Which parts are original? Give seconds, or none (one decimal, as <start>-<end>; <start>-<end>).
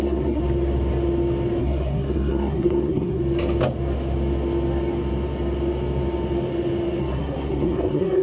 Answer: 0.4-1.6; 3.2-7.0